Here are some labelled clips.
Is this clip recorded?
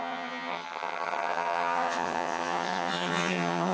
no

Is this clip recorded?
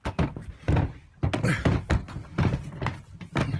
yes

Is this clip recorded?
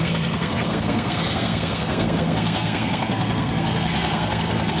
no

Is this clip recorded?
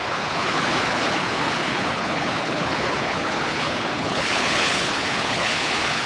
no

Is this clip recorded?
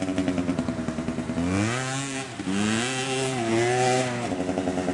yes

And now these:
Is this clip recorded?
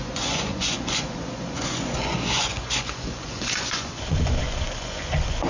no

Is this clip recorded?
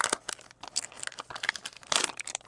yes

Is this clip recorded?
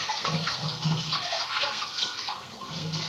no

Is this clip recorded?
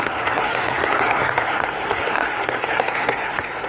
no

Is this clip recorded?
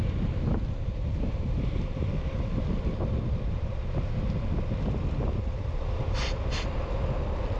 yes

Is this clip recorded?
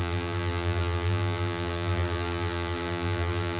no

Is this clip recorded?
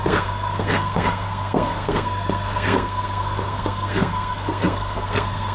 no